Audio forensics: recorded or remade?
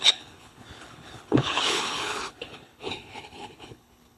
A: remade